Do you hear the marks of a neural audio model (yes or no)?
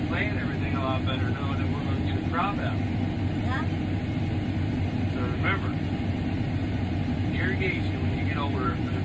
no